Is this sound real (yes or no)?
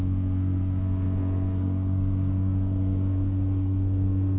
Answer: no